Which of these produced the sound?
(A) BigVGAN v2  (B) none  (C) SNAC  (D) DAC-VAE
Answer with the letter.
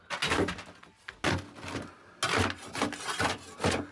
B